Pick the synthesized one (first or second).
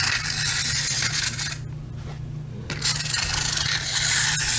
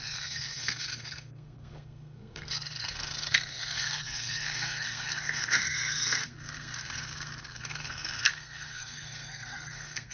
second